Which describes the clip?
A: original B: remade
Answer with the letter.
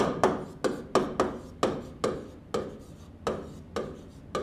A